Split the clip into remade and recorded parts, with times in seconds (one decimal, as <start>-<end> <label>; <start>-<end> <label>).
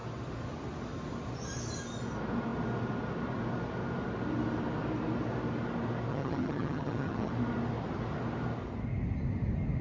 0.0-6.1 recorded; 6.1-7.3 remade; 7.3-9.8 recorded